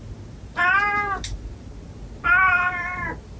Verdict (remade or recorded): recorded